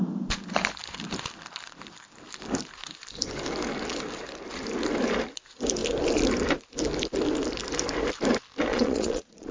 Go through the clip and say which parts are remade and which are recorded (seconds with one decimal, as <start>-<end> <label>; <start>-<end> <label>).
0.0-8.7 recorded; 8.7-9.5 remade